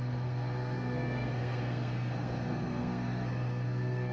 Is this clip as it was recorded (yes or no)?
no